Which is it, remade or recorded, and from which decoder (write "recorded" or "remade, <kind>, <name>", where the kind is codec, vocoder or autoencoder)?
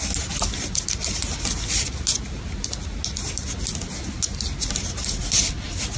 recorded